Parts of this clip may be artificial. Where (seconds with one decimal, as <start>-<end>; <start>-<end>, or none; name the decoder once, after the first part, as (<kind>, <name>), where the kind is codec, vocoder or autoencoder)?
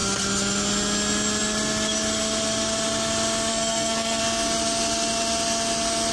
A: 3.5-4.2 (codec, SNAC)